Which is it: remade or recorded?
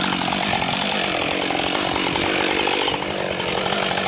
recorded